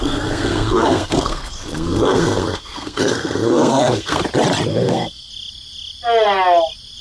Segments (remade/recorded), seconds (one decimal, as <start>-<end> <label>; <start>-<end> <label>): 0.0-4.2 remade; 4.2-4.7 recorded; 4.7-5.3 remade; 5.3-7.0 recorded